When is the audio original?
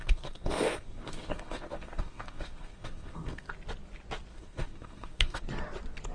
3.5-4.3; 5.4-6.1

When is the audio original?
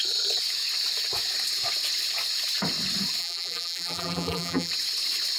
0.0-3.2; 4.7-5.4